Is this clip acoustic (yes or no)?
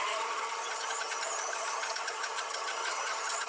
no